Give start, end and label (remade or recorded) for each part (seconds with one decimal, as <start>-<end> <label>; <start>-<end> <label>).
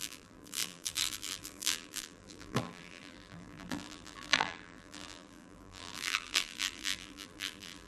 0.0-7.9 remade